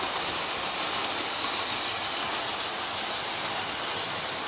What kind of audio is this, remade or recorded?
recorded